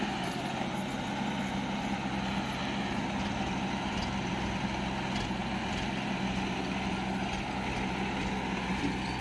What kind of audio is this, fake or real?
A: real